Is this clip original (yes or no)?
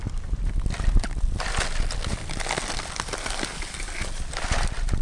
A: yes